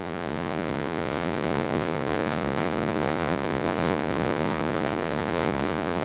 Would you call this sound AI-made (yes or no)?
yes